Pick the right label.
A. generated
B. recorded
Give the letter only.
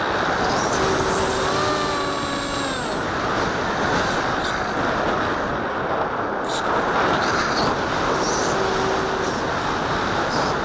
B